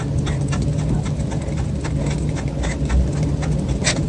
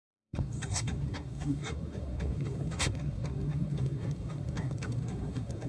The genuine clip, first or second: first